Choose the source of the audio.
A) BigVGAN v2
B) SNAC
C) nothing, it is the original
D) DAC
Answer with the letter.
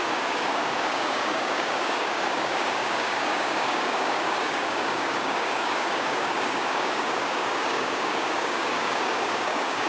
D